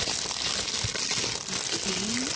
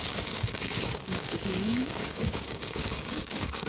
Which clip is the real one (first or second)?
first